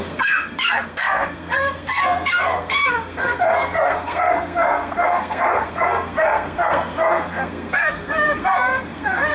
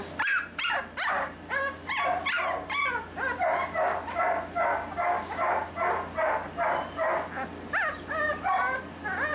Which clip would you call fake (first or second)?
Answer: first